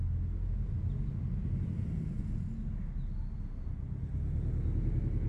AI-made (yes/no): no